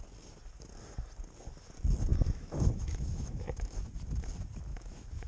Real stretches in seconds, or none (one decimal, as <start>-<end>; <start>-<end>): 0.0-2.1; 3.9-4.7